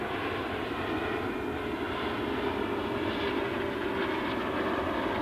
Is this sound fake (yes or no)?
no